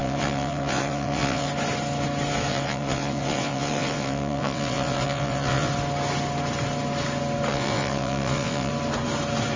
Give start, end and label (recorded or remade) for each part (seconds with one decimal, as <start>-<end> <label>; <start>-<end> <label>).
0.0-1.5 remade; 1.5-2.5 recorded; 2.5-5.7 remade; 5.7-7.5 recorded; 7.5-8.7 remade; 8.7-9.6 recorded